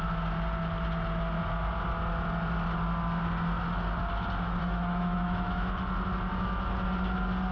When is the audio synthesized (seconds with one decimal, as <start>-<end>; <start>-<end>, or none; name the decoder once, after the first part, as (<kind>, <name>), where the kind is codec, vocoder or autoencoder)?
4.6-5.7 (autoencoder, DAC-VAE)